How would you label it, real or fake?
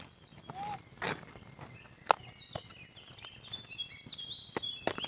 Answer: real